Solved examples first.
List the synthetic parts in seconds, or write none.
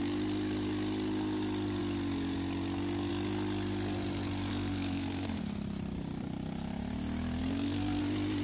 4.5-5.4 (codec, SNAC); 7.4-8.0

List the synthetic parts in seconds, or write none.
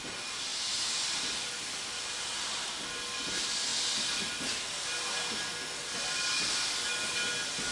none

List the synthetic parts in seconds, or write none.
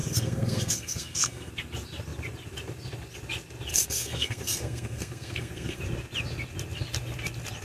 0.0-1.5 (codec, SNAC); 3.7-5.8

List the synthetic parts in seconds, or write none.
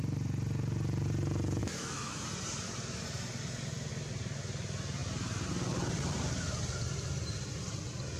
1.6-2.2 (autoencoder, DAC-VAE)